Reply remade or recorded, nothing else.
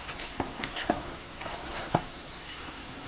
remade